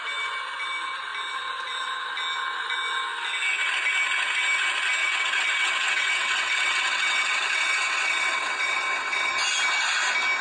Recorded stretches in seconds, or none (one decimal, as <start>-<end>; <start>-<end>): 0.0-5.0; 9.3-10.4